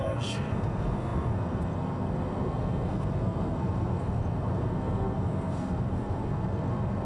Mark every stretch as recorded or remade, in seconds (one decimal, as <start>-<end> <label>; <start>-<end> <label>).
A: 0.0-7.0 remade